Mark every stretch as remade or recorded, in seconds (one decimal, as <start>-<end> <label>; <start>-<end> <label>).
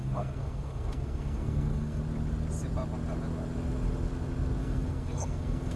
0.0-2.0 remade; 2.0-4.6 recorded; 4.6-5.8 remade